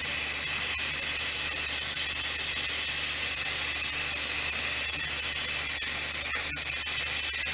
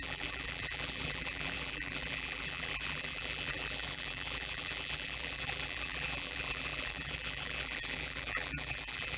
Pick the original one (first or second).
first